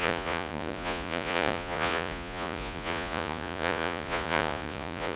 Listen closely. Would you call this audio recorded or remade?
remade